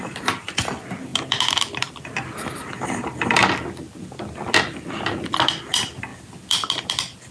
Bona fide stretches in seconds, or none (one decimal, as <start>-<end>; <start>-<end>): 0.0-7.3